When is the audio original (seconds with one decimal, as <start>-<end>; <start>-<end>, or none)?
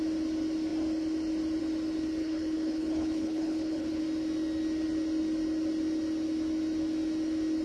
0.0-2.2; 4.0-7.6